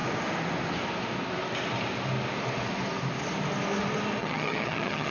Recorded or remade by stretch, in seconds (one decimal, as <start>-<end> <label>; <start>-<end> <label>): 0.0-4.2 recorded; 4.2-5.1 remade